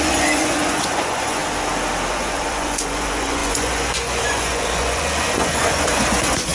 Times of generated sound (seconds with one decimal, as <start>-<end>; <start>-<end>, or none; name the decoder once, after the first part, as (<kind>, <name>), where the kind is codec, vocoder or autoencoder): 0.0-1.4 (vocoder, Vocos); 2.1-6.5